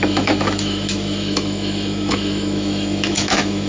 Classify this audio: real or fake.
fake